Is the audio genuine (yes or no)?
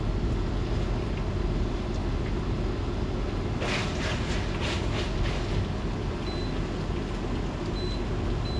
yes